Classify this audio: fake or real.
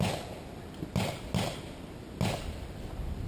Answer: real